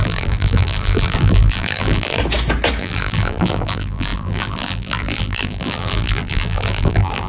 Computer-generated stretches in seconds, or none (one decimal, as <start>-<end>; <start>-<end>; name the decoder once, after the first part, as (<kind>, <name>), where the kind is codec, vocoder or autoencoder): 0.0-2.2 (vocoder, BigVGAN v2); 2.8-7.3